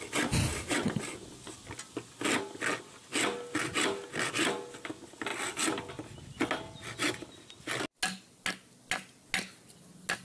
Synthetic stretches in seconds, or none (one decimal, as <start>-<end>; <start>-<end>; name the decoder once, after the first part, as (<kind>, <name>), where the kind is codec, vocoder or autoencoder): none